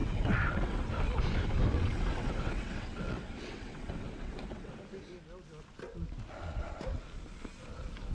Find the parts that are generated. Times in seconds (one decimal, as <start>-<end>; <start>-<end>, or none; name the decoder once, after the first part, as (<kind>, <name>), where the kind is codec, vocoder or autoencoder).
0.0-0.9 (vocoder, WaveNeXt); 1.7-4.7